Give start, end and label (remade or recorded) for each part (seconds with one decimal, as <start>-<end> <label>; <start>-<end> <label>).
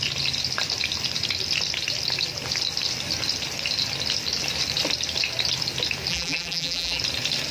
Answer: 0.0-6.1 recorded; 6.1-7.0 remade; 7.0-7.5 recorded